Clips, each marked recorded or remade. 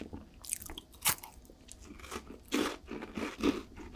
recorded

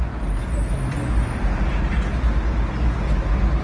recorded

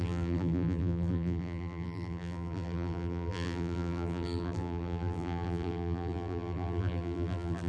remade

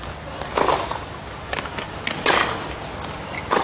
recorded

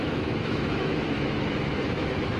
remade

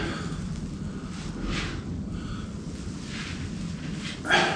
recorded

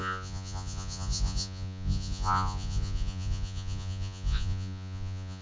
remade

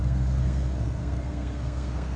remade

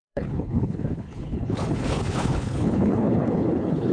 remade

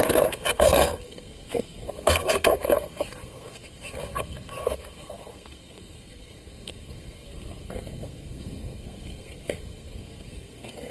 remade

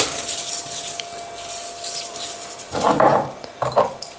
recorded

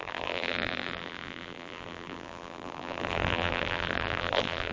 remade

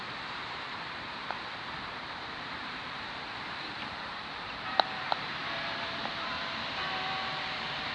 remade